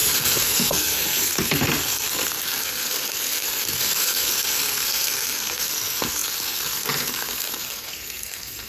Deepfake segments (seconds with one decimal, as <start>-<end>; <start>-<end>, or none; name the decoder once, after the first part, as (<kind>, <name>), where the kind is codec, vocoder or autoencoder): 0.0-8.7 (codec, SNAC)